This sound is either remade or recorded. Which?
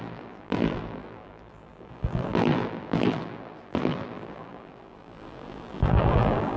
remade